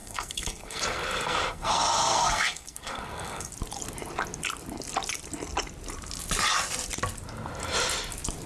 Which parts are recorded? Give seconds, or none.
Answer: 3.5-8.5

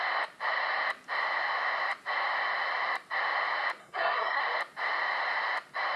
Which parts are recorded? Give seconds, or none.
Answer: 0.0-3.8; 4.4-6.0

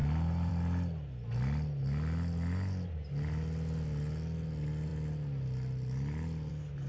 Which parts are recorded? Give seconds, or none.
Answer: 0.0-6.9

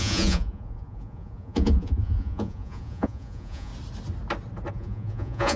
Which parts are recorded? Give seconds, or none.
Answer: 3.7-4.7

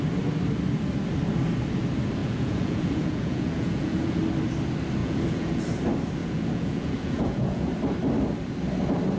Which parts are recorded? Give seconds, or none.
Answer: 0.0-2.2; 4.2-5.0; 5.6-6.2; 7.7-9.2

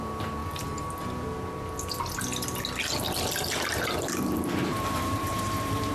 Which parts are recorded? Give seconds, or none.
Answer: 0.4-3.5